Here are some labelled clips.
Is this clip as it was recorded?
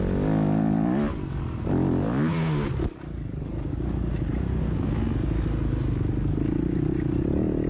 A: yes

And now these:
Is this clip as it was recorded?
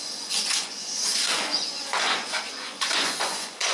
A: no